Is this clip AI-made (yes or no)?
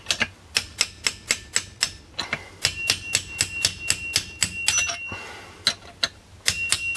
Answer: no